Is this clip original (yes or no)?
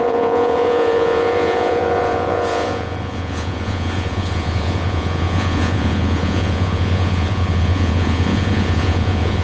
no